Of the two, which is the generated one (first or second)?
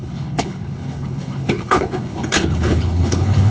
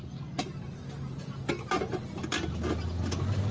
first